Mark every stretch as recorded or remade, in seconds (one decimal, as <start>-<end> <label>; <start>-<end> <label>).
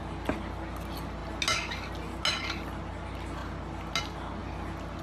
0.0-5.0 recorded